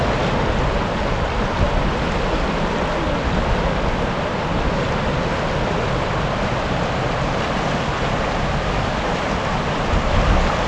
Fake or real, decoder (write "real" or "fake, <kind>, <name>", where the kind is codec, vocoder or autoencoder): real